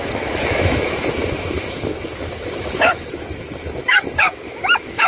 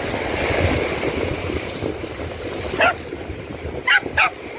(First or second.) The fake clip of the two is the first